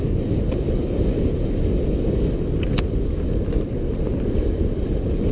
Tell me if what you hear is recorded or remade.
recorded